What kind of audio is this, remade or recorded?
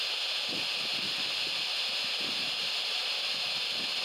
recorded